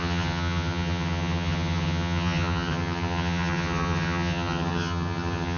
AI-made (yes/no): yes